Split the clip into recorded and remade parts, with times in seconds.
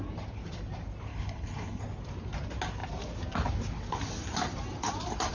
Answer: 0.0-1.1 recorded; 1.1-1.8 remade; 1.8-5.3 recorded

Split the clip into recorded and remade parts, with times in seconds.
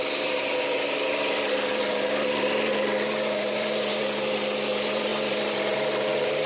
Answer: 0.0-6.5 remade